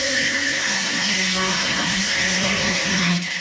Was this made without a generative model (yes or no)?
no